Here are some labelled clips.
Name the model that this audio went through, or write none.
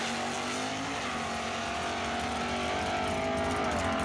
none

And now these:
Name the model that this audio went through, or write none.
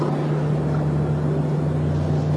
none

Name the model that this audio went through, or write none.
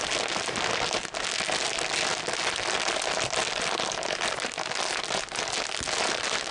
none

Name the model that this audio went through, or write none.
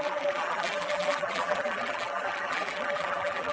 vocoder, BigVGAN v2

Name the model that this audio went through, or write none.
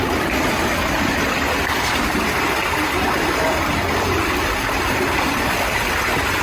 vocoder, BigVGAN v2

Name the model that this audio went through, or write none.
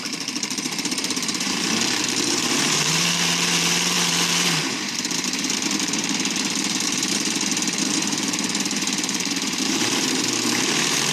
vocoder, BigVGAN v2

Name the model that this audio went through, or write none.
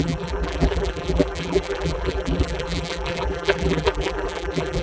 vocoder, BigVGAN v2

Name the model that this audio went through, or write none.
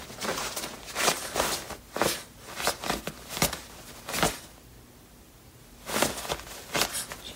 none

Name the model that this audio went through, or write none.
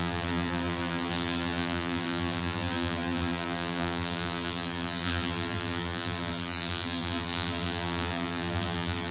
vocoder, BigVGAN v2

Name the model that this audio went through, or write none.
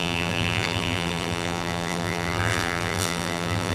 vocoder, BigVGAN v2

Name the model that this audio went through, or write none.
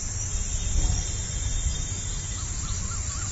none